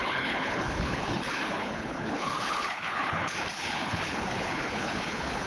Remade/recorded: remade